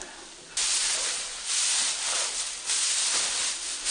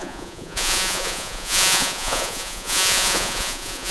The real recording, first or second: first